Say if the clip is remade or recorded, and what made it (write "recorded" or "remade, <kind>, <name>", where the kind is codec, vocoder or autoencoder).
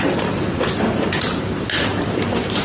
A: recorded